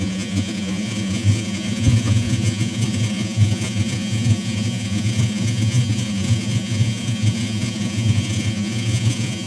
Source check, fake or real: fake